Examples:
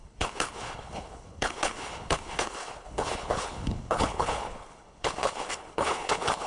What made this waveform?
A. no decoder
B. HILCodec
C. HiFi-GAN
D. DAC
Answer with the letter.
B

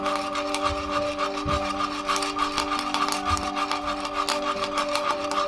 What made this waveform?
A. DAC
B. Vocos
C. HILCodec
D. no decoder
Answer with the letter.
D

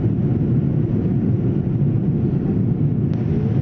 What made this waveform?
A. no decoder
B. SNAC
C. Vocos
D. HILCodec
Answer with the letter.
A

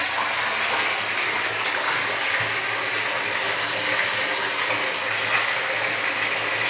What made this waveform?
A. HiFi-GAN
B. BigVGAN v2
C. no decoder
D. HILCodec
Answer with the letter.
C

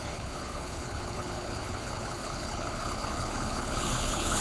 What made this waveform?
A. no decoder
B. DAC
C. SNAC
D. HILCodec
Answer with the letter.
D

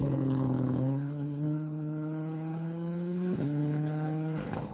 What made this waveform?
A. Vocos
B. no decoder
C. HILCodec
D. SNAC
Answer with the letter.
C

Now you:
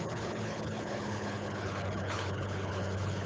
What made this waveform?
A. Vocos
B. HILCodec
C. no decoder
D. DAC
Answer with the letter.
B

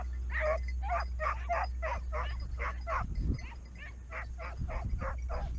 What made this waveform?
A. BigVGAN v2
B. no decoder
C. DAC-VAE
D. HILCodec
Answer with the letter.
B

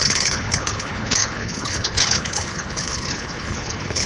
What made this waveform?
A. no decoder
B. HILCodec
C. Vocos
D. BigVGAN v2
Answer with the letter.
B